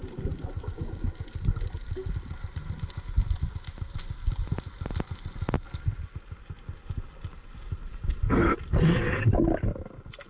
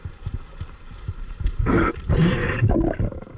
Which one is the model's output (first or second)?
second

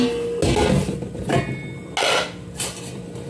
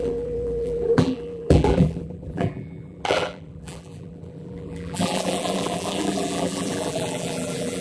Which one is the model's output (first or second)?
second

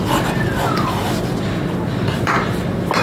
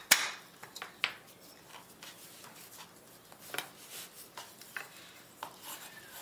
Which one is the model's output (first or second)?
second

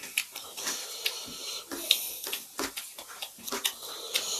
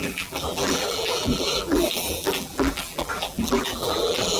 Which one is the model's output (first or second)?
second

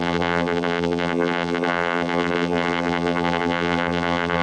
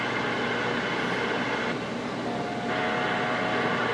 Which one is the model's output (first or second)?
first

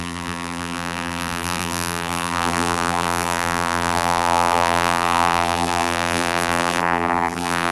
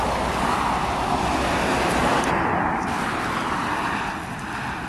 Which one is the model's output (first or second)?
first